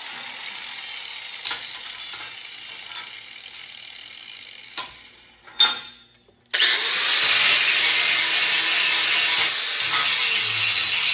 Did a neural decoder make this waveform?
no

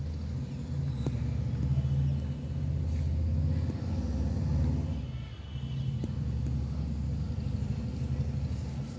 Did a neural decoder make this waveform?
no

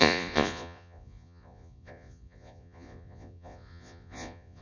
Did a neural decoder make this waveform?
yes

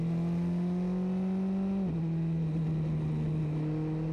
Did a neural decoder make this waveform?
no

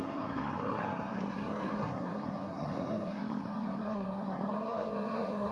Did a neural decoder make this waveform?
yes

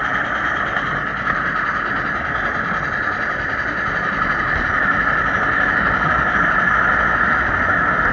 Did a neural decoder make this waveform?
no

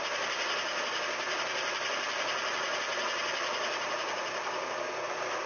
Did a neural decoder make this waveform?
no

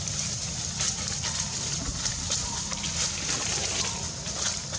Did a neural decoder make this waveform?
no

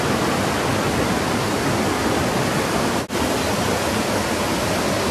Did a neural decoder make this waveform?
no